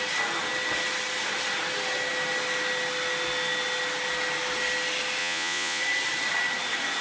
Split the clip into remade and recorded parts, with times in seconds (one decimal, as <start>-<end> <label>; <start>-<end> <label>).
0.0-5.2 recorded; 5.2-5.8 remade; 5.8-7.0 recorded